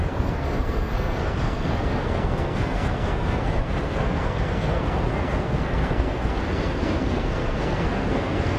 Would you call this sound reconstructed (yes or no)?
yes